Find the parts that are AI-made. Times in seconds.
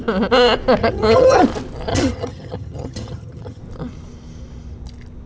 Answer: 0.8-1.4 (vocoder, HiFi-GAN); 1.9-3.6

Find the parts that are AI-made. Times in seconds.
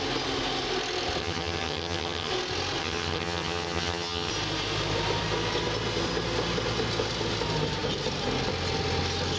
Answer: 1.2-2.3 (vocoder, HiFi-GAN); 2.8-4.3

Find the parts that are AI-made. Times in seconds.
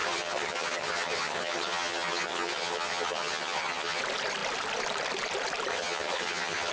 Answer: 0.0-4.0 (vocoder, HiFi-GAN); 5.7-6.7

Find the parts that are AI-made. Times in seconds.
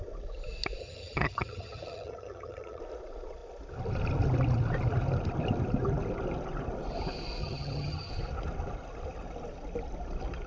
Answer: 0.8-2.8 (vocoder, HiFi-GAN); 7.4-8.1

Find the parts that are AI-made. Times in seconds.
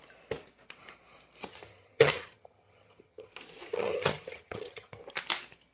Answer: 1.5-3.3 (vocoder, HiFi-GAN); 3.7-5.0